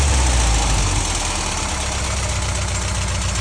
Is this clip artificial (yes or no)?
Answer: no